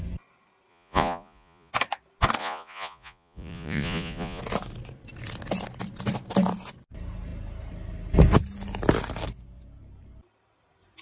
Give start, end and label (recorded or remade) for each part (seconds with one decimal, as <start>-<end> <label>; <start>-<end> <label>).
0.0-0.7 recorded; 0.7-1.7 remade; 1.7-2.4 recorded; 2.4-4.4 remade; 4.4-11.0 recorded